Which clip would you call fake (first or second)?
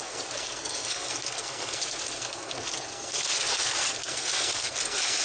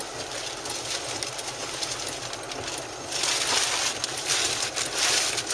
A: first